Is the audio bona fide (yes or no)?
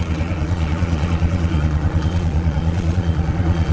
no